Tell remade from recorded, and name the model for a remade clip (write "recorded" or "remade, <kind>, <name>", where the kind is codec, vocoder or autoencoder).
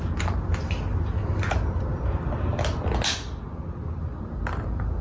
recorded